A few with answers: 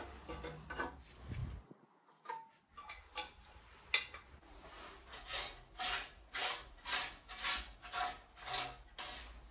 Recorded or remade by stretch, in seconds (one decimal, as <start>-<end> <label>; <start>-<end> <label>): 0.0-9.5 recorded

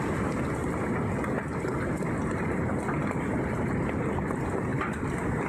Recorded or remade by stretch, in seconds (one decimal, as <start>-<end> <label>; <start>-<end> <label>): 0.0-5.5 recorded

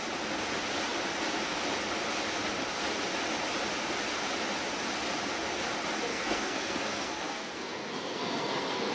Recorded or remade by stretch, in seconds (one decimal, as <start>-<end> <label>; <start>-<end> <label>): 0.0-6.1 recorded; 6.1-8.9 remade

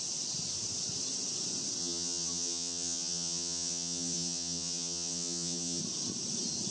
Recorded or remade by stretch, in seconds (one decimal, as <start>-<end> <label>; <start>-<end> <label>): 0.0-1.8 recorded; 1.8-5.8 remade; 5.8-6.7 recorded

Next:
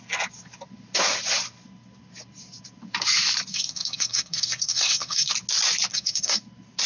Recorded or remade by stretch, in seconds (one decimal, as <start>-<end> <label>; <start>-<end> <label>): 0.0-3.5 recorded; 3.5-5.3 remade; 5.3-5.9 recorded; 5.9-6.4 remade; 6.4-6.9 recorded

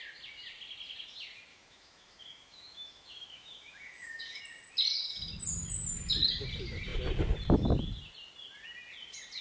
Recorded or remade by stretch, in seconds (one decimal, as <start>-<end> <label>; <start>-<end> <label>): 0.0-1.5 recorded; 1.5-4.4 remade; 4.4-9.4 recorded

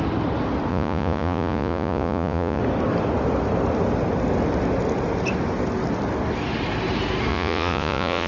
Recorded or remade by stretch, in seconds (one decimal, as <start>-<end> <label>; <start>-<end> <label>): 0.0-0.7 recorded; 0.7-2.6 remade; 2.6-7.3 recorded; 7.3-8.3 remade